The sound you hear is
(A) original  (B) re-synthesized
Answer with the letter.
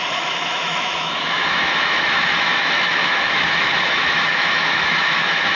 B